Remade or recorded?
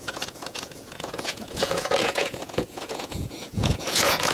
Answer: remade